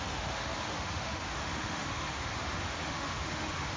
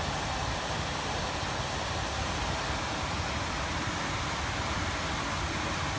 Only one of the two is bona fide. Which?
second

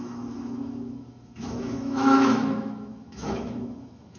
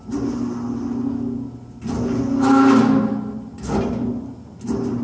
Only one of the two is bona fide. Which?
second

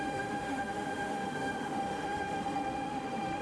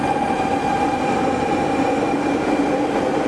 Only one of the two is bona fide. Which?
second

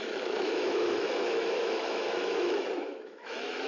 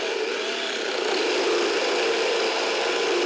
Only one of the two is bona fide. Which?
second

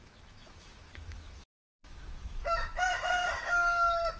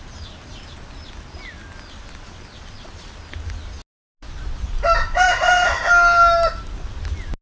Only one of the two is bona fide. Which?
second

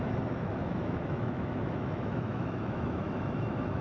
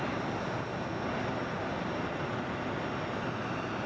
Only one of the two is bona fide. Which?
second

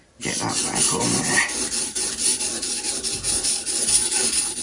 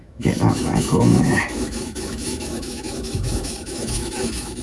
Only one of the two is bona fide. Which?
first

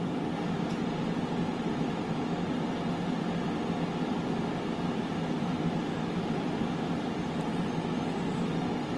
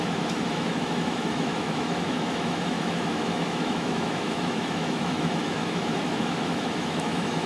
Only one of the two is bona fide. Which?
first